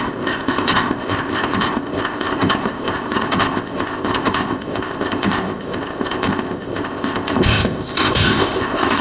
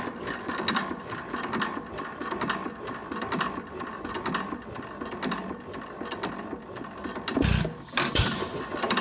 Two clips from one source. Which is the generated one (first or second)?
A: first